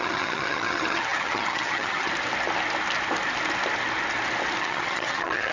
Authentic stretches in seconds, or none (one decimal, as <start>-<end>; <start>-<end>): 2.1-4.6